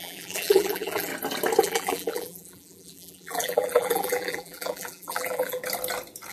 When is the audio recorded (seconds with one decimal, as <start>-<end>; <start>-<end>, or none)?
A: 1.1-1.6; 5.6-6.3